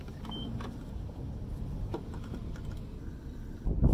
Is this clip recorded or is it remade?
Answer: recorded